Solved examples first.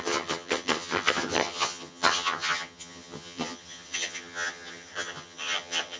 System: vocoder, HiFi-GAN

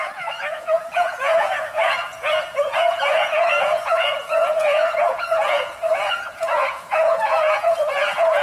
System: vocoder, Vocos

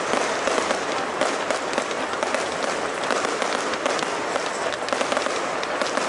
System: none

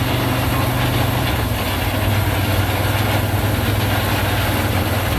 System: none